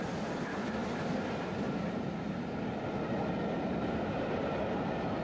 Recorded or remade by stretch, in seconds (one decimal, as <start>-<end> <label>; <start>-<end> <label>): 0.0-5.2 recorded